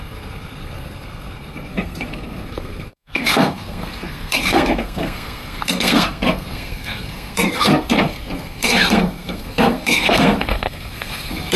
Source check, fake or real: fake